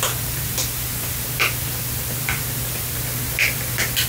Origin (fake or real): real